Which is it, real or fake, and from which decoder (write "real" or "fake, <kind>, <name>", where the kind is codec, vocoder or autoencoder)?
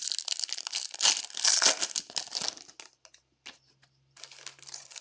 real